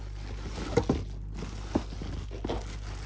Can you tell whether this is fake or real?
real